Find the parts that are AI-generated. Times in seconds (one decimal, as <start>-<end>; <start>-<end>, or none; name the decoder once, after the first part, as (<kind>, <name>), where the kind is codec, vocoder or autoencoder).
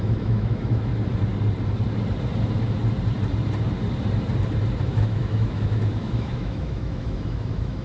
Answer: 0.0-0.9 (autoencoder, DAC-VAE); 4.8-7.8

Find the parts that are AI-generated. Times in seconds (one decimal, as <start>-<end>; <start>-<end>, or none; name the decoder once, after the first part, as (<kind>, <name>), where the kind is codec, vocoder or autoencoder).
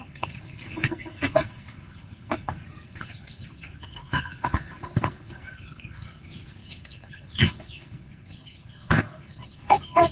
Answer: 0.0-10.1 (codec, SNAC)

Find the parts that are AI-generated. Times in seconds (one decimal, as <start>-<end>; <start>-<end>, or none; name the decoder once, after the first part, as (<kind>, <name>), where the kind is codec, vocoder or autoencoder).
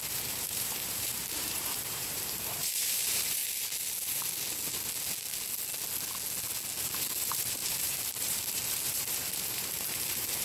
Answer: 0.0-3.4 (vocoder, BigVGAN v2); 6.8-10.4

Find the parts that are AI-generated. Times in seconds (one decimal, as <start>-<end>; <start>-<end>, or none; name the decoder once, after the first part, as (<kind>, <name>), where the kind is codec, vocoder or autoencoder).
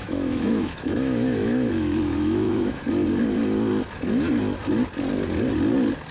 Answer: 0.0-2.8 (autoencoder, DAC-VAE)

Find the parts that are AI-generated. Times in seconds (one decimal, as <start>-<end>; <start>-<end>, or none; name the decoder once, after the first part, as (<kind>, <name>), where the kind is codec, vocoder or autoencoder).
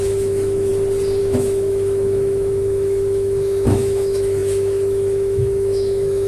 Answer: 0.0-0.7 (autoencoder, DAC-VAE); 1.2-6.3